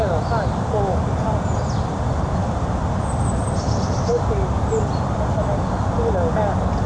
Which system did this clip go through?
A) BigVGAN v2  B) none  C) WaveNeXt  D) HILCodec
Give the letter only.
B